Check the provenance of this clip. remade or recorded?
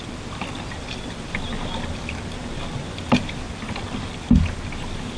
recorded